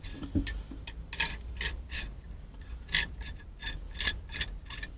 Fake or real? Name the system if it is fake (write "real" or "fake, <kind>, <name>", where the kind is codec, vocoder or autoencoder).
real